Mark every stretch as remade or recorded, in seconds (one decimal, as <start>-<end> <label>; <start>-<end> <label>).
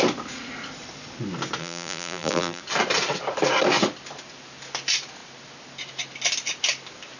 0.0-1.6 recorded; 1.6-2.6 remade; 2.6-7.2 recorded